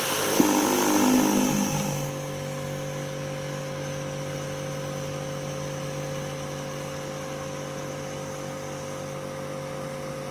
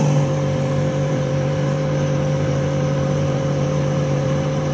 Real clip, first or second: first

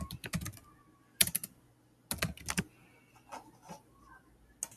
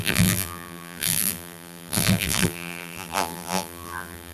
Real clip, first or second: first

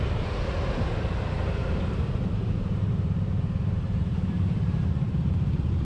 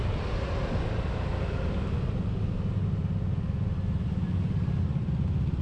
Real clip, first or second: second